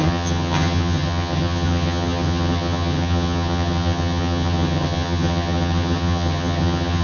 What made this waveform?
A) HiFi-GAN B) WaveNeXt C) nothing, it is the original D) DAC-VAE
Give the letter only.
A